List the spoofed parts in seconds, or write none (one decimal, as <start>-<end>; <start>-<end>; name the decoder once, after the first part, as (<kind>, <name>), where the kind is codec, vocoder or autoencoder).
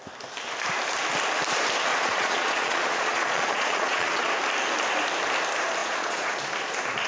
1.9-4.3 (vocoder, Vocos); 5.8-6.4